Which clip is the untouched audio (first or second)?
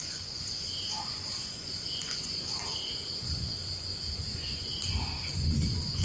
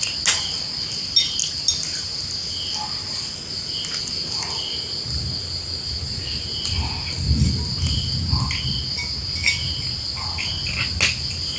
second